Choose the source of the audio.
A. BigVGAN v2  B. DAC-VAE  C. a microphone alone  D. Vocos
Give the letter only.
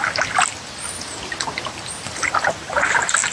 C